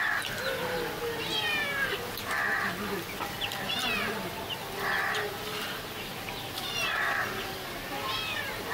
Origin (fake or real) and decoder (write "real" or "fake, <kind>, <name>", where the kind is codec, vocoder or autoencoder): real